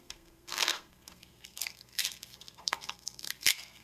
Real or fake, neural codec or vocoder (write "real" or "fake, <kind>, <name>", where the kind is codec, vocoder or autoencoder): fake, codec, SNAC